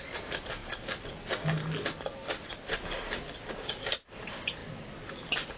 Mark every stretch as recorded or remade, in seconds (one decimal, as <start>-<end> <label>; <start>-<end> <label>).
0.0-5.6 recorded